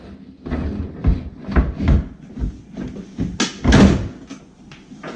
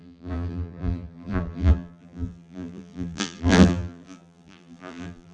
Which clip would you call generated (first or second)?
second